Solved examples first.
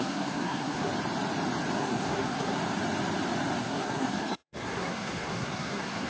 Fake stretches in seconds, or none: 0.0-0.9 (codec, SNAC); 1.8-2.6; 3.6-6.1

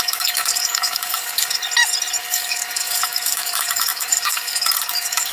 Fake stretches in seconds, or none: 0.0-1.6 (codec, DAC); 2.2-5.3

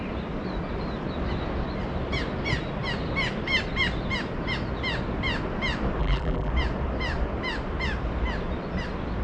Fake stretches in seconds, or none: 6.0-6.5 (vocoder, BigVGAN v2)

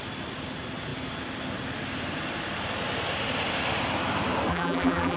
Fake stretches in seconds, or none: 4.5-5.2 (vocoder, BigVGAN v2)

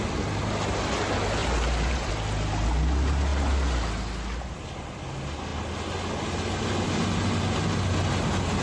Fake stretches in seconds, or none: 1.4-2.1 (vocoder, BigVGAN v2)

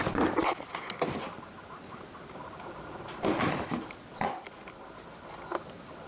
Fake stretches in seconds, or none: none

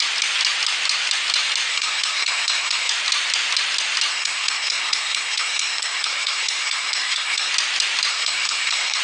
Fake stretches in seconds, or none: 1.7-2.9 (codec, SNAC); 4.1-7.5; 8.1-9.0

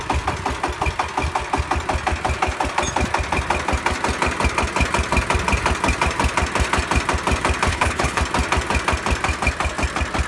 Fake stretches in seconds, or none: 7.7-8.2 (codec, HILCodec)